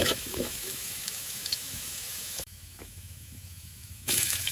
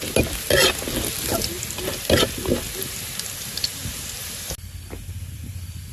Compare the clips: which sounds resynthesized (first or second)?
first